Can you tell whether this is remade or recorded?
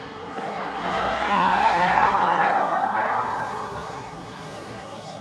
remade